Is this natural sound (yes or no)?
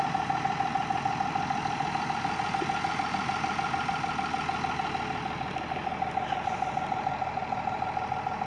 yes